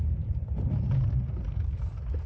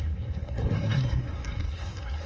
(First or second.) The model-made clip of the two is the second